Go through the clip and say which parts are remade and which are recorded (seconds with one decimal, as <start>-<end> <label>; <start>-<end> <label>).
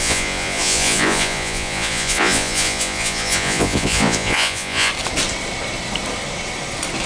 0.0-4.9 remade; 4.9-7.1 recorded